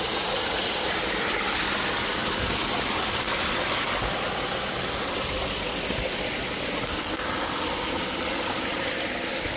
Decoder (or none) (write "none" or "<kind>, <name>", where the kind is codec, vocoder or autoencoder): none